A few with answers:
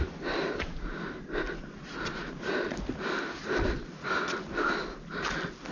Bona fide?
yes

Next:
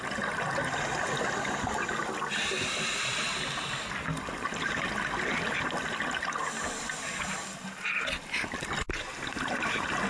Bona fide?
yes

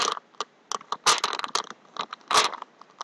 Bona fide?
yes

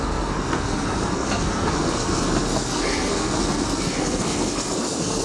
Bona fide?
no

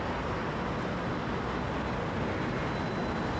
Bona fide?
yes